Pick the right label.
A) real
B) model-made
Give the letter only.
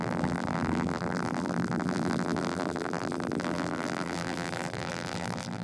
B